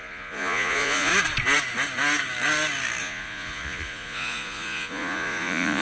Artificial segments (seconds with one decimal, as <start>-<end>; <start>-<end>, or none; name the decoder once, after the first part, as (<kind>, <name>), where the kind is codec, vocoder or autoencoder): 0.0-1.1 (vocoder, Vocos); 3.0-5.8